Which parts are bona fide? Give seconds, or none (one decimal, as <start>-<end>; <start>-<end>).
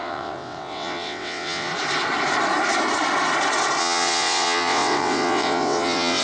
1.7-3.8